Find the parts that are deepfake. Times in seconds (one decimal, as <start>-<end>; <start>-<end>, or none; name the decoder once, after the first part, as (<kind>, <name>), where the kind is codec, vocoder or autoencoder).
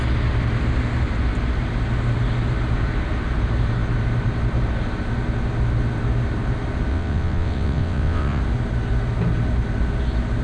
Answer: 6.9-8.4 (vocoder, WaveNeXt)